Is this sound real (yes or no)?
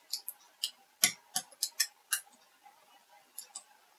yes